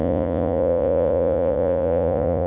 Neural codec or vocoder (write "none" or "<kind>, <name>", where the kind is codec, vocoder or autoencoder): vocoder, Vocos